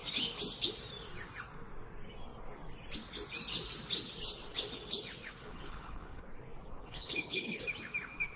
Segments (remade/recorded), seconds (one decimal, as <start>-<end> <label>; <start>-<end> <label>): 0.0-5.4 recorded; 5.4-6.2 remade; 6.2-6.8 recorded; 6.8-7.6 remade; 7.6-8.4 recorded